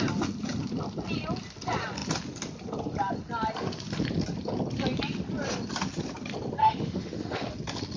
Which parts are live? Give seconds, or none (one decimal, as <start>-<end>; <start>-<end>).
0.0-6.6; 7.5-8.0

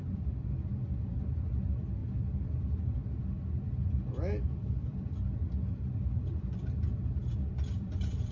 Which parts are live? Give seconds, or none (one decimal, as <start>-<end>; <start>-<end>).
2.0-4.7; 6.6-7.2